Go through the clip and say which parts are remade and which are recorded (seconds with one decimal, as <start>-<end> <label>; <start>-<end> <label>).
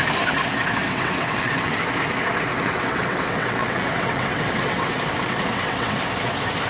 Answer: 0.0-0.8 recorded; 0.8-1.7 remade; 1.7-2.5 recorded; 2.5-6.0 remade; 6.0-6.7 recorded